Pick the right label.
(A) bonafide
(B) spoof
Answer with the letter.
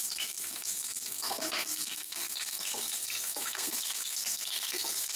B